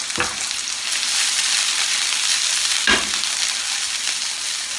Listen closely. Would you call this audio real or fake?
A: real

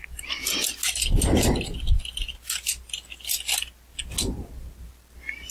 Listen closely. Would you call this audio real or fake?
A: real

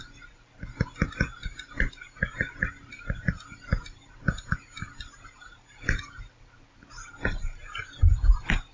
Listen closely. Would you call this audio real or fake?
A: real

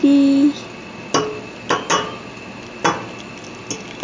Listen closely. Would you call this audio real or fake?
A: real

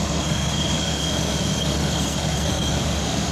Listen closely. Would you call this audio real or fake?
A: fake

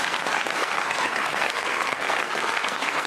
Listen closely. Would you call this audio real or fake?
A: fake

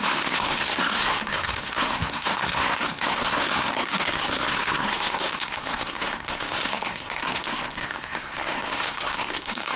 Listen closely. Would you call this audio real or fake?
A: fake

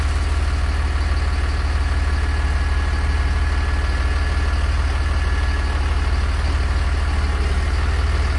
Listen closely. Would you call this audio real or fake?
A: real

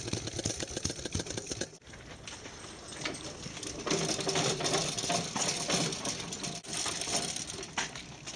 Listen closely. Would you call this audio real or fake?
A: real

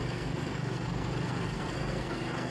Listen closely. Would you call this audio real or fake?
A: fake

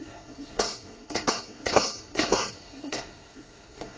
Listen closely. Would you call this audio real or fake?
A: fake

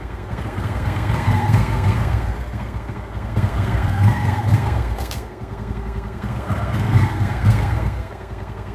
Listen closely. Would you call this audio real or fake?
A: fake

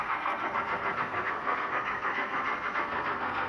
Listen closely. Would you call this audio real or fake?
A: fake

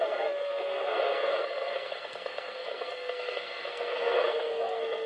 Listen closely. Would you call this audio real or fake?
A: fake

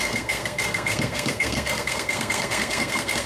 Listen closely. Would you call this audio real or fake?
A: fake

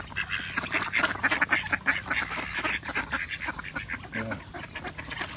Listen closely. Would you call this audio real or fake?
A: real